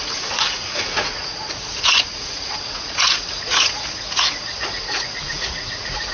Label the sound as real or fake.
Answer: fake